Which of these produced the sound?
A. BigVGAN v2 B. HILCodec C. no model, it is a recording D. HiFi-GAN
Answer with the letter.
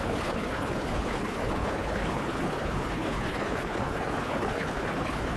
B